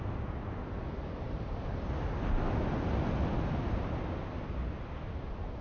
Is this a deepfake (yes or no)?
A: no